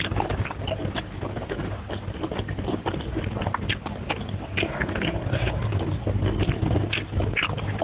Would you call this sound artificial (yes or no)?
no